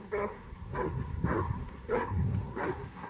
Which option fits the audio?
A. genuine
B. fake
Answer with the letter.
B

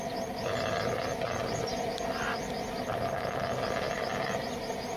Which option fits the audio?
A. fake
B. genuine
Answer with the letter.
B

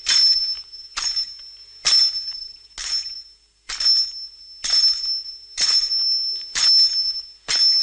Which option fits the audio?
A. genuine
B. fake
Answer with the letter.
A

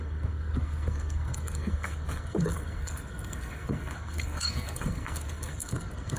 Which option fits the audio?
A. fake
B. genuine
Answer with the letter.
A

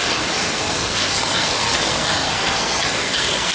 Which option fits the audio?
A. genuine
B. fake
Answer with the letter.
B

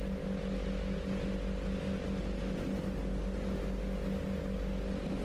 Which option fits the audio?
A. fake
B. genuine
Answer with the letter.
B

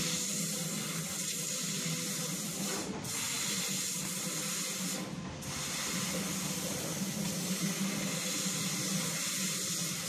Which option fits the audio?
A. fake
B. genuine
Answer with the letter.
B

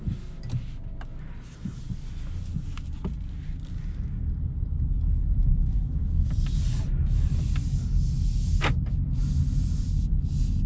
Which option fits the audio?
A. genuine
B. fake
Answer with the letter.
A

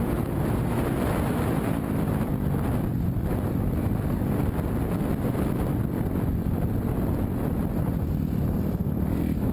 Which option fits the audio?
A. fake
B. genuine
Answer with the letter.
B